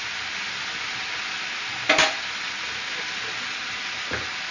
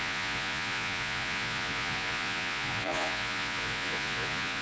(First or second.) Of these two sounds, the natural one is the first